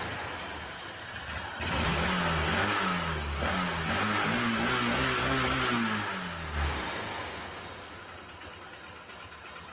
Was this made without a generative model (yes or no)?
yes